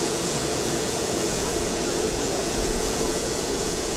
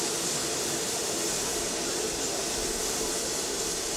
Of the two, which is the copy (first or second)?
first